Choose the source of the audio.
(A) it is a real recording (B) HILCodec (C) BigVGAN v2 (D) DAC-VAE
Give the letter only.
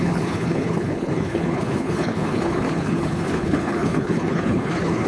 B